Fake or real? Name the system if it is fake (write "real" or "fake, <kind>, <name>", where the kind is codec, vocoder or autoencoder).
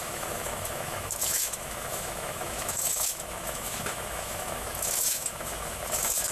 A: fake, autoencoder, DAC-VAE